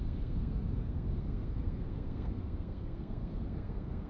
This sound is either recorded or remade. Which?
remade